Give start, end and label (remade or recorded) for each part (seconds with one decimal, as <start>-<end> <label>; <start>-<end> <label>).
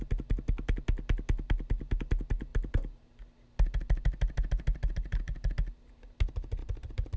0.0-2.5 recorded; 2.5-3.2 remade; 3.2-6.6 recorded; 6.6-7.2 remade